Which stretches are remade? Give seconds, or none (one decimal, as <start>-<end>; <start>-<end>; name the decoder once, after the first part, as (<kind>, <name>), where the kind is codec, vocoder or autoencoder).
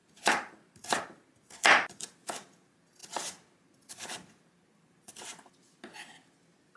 0.0-0.8 (vocoder, BigVGAN v2)